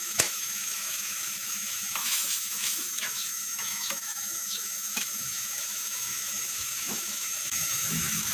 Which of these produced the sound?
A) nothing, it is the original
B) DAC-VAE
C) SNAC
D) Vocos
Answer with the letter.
B